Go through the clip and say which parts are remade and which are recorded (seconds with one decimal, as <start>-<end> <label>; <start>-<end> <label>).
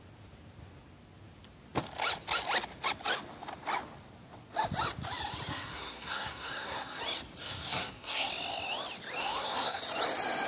0.0-5.5 recorded; 5.5-7.0 remade; 7.0-7.4 recorded; 7.4-8.3 remade; 8.3-9.2 recorded; 9.2-9.8 remade; 9.8-10.5 recorded